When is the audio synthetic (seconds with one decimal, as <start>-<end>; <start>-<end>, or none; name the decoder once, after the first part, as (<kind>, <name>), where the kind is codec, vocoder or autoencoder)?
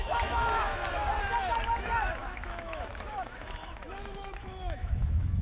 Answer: 0.0-0.8 (autoencoder, DAC-VAE); 1.8-5.4